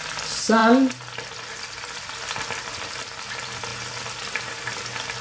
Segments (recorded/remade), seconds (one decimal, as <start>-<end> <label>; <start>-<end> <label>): 0.0-5.2 recorded